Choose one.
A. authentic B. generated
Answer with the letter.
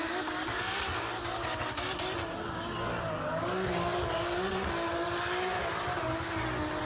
A